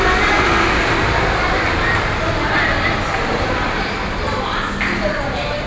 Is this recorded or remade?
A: recorded